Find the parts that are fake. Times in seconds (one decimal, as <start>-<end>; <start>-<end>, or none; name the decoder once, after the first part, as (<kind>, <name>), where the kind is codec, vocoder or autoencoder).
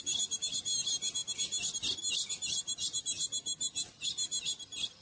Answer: none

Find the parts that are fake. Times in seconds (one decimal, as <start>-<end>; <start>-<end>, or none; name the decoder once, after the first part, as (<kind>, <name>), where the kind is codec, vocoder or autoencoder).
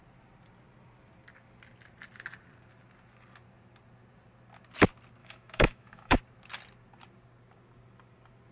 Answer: 5.2-6.2 (autoencoder, DAC-VAE)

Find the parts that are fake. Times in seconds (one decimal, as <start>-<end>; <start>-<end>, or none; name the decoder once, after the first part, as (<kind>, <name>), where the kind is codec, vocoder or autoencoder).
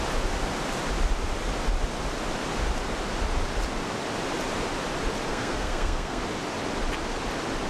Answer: 5.3-6.2 (codec, SNAC)